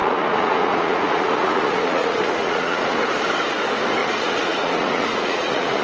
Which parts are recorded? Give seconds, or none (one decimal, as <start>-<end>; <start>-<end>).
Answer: 3.0-4.0